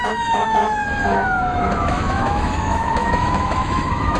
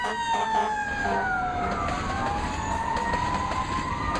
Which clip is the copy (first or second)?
first